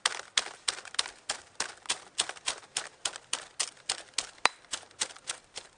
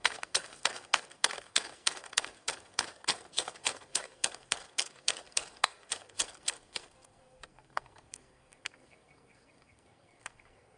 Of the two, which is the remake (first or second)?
second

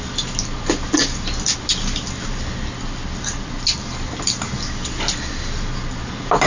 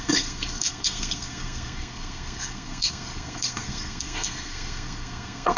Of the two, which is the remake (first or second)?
second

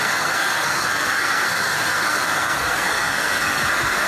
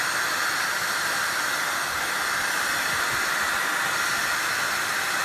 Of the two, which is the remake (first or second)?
first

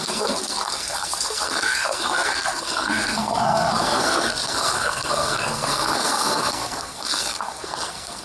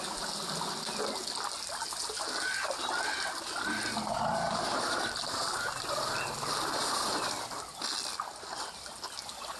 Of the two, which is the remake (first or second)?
first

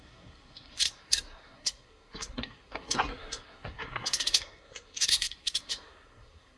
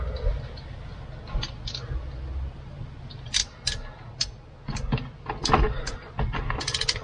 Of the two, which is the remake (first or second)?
first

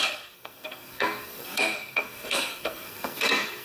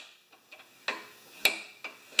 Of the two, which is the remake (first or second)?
first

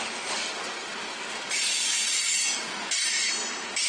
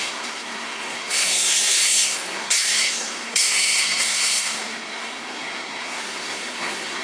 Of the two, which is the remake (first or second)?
second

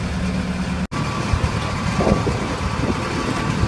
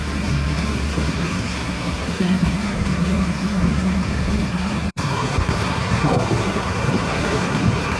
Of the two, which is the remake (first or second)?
second